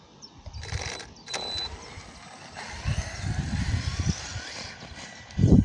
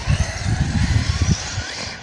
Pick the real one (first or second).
first